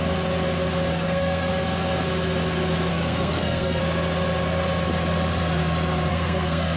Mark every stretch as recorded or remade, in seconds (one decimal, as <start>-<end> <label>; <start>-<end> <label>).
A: 0.0-0.9 recorded; 0.9-1.5 remade; 1.5-2.9 recorded; 2.9-3.8 remade; 3.8-6.1 recorded; 6.1-6.8 remade